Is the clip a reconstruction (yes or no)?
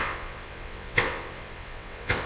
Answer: yes